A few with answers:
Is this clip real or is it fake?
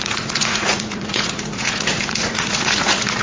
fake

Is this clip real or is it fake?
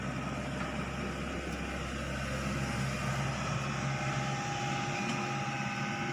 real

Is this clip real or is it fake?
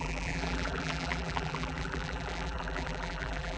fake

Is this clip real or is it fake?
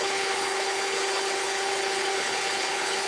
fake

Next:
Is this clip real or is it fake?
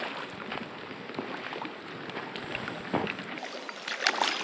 real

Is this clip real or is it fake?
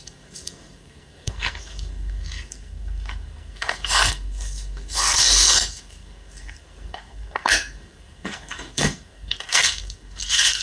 fake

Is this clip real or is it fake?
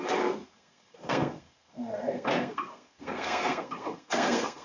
fake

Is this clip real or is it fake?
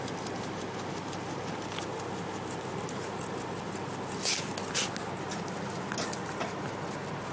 real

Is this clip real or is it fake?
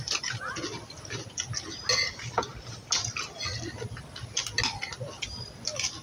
real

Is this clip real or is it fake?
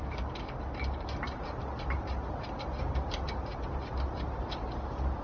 real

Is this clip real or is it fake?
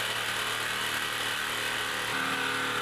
real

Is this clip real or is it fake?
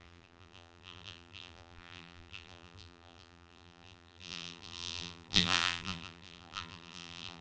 fake